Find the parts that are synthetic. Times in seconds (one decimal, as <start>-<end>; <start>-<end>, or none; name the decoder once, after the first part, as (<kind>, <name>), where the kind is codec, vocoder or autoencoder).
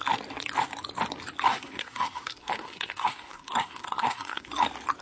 1.5-4.5 (codec, SNAC)